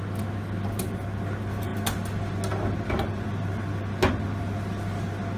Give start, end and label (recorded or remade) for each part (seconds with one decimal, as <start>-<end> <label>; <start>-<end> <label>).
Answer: 0.0-5.4 recorded